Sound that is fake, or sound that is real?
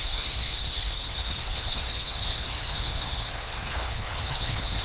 fake